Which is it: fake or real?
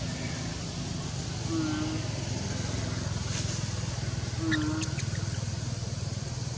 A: real